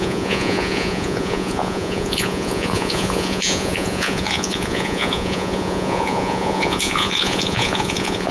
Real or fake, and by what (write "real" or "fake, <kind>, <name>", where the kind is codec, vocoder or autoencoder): fake, vocoder, Vocos